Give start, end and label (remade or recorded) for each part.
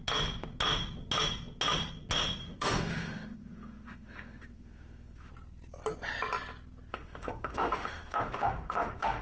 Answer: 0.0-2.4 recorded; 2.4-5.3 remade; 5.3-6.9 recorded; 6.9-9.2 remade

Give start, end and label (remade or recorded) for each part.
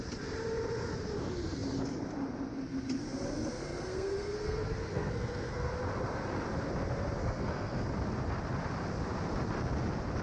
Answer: 0.0-3.6 recorded; 3.6-5.7 remade; 5.7-7.2 recorded; 7.2-7.9 remade; 7.9-10.2 recorded